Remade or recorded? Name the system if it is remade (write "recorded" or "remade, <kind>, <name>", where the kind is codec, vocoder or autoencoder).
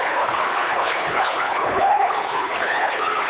remade, codec, HILCodec